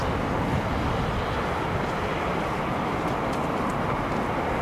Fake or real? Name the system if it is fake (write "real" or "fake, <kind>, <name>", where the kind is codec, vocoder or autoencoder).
real